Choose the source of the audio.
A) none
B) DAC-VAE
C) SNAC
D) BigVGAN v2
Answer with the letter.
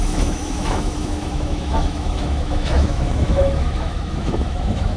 B